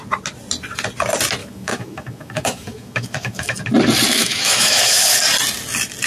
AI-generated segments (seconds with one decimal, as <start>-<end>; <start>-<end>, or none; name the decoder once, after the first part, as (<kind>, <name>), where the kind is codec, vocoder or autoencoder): 1.4-3.6 (autoencoder, DAC-VAE); 4.1-5.2